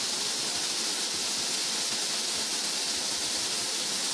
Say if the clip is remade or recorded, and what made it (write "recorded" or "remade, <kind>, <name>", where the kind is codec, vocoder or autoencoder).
recorded